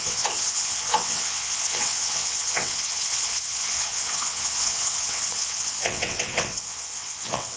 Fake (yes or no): yes